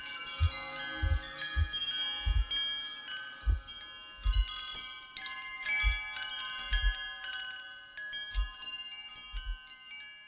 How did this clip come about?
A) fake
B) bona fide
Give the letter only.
B